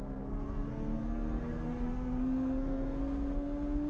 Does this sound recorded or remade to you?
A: remade